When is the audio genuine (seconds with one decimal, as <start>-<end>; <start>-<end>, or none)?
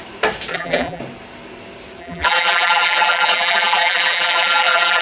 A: 0.0-0.5; 1.0-2.0